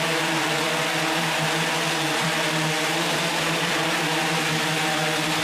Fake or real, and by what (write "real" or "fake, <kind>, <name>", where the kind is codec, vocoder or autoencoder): fake, vocoder, BigVGAN v2